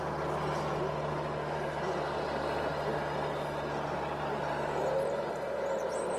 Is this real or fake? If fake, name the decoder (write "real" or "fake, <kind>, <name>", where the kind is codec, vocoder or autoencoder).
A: real